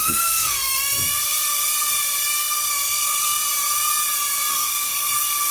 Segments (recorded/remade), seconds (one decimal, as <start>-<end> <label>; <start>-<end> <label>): 0.0-1.2 remade; 1.2-2.4 recorded; 2.4-3.4 remade; 3.4-4.5 recorded; 4.5-5.5 remade